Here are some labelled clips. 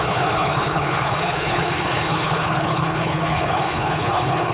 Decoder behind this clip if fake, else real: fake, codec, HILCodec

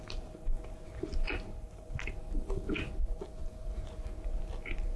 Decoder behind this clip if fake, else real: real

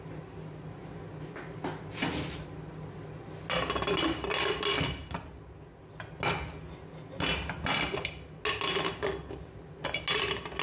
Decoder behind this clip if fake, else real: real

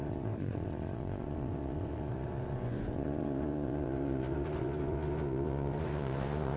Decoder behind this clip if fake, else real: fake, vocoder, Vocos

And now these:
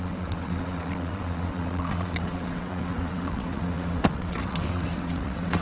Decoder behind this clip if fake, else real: fake, vocoder, WaveNeXt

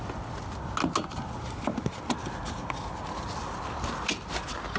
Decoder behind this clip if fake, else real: real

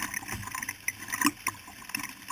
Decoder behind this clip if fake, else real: real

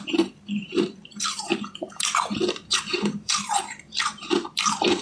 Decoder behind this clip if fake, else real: fake, vocoder, BigVGAN v2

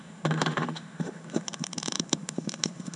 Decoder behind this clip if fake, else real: fake, autoencoder, DAC-VAE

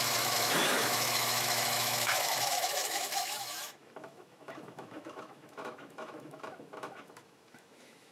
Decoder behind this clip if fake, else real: fake, autoencoder, DAC-VAE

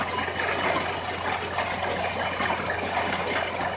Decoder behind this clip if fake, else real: real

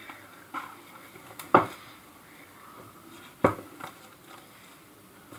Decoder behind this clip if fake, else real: fake, vocoder, BigVGAN v2